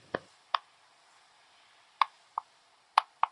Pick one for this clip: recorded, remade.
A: recorded